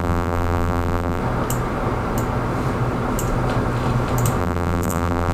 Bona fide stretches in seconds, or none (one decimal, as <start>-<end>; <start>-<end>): 1.2-4.4